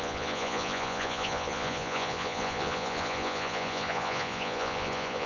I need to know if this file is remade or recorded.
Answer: remade